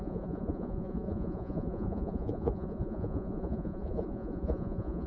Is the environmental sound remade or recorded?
remade